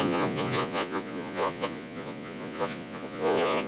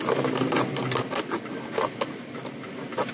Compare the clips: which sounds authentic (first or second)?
second